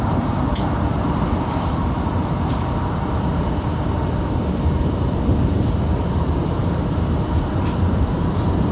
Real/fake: fake